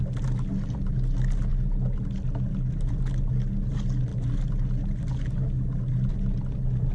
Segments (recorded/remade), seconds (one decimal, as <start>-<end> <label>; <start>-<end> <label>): 0.0-6.9 recorded